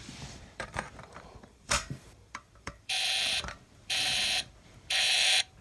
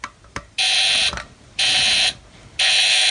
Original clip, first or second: second